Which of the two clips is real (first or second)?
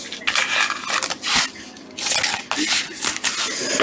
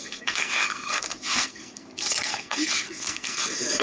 first